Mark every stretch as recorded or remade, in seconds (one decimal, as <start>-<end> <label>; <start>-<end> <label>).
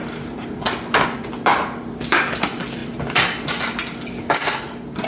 0.0-0.6 remade; 0.6-5.1 recorded